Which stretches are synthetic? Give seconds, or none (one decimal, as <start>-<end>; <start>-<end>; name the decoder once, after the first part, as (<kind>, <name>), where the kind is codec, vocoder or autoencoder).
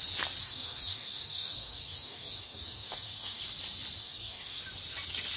0.4-3.4 (codec, DAC); 4.0-4.6